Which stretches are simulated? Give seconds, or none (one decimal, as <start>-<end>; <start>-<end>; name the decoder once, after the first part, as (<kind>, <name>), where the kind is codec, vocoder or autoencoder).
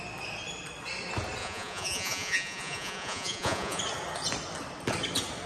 1.4-3.8 (vocoder, Vocos)